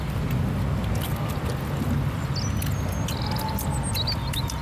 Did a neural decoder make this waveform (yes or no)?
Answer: no